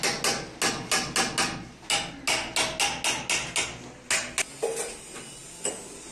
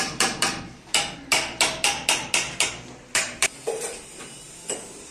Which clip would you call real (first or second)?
first